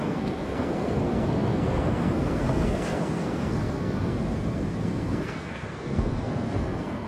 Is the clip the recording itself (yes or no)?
no